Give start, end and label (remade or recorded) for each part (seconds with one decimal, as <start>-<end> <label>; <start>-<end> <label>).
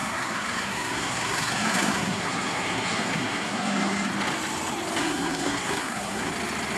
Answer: 0.0-4.1 remade; 4.1-5.0 recorded; 5.0-6.3 remade; 6.3-6.8 recorded